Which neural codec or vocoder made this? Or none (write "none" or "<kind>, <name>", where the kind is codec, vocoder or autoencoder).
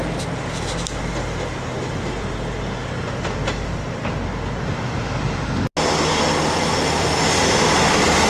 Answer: none